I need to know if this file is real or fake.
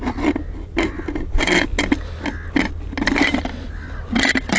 real